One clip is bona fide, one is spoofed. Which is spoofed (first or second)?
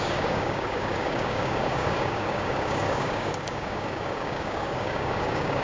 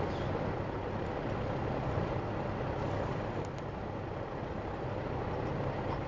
first